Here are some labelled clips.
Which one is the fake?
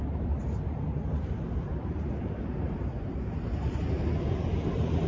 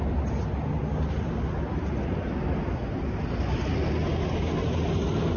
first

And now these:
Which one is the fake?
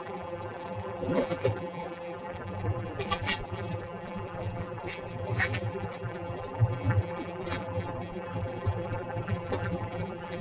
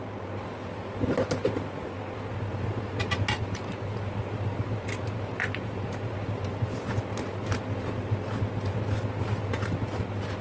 first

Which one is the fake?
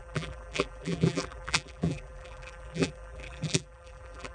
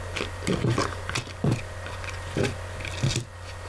first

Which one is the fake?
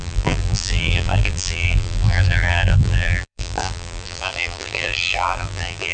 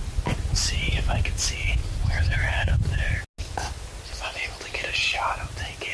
first